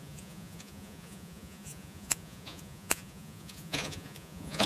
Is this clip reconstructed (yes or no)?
yes